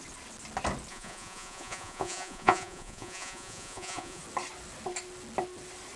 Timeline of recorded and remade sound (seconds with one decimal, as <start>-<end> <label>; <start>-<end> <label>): 0.0-0.9 recorded; 0.9-4.2 remade; 4.2-6.0 recorded